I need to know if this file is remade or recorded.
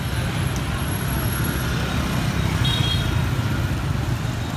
recorded